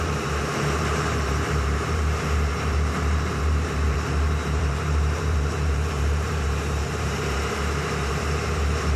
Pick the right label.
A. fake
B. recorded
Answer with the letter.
A